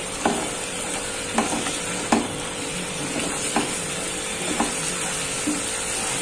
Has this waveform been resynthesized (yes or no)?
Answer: no